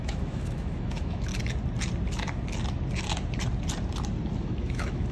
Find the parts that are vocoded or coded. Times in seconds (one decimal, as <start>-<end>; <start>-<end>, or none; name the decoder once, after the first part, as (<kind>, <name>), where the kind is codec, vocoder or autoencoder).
0.0-1.3 (autoencoder, DAC-VAE); 4.4-5.1